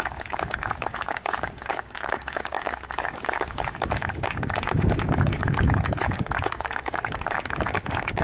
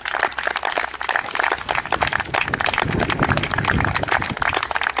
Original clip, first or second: second